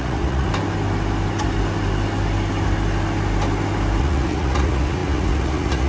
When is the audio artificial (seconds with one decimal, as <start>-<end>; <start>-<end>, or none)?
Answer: 0.0-0.5; 4.0-5.9